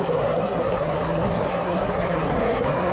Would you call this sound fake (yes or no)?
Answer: yes